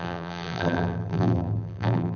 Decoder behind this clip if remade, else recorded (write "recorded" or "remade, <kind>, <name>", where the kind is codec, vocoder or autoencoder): remade, vocoder, BigVGAN v2